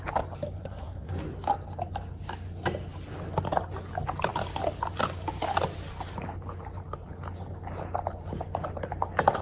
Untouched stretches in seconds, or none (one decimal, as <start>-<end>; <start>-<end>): 0.0-0.6; 1.2-9.4